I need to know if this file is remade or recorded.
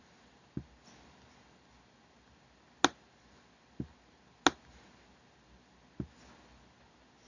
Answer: recorded